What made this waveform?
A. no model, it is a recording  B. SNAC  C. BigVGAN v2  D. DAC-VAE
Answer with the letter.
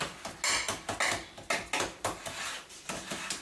A